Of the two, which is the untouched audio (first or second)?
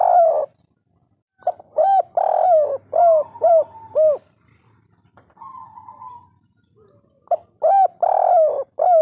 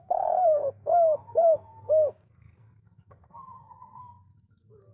first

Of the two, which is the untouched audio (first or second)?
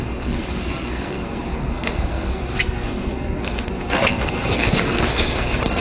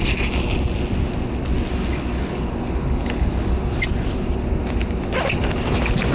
second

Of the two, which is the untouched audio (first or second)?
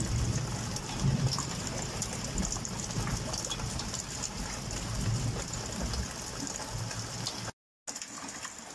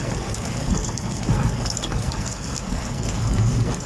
first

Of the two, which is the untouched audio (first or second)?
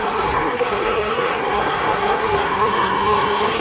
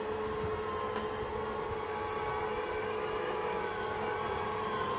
second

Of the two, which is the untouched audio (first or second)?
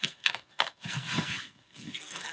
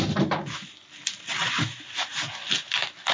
second